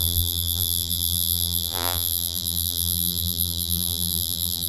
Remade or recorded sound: remade